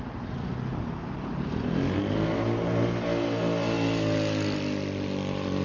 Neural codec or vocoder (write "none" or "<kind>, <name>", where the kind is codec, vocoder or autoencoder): none